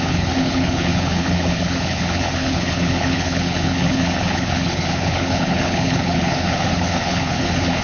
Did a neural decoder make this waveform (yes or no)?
yes